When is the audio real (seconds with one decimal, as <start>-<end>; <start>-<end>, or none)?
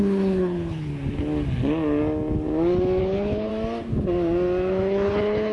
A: 0.9-3.0; 3.5-4.7